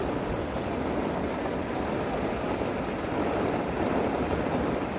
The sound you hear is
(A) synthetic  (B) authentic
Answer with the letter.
B